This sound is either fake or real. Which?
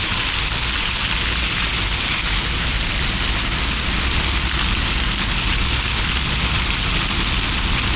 real